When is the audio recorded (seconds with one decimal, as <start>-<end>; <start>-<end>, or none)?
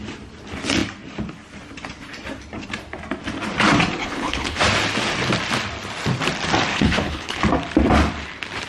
0.0-4.0; 4.6-6.7; 7.4-8.7